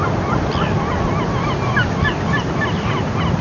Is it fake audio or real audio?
real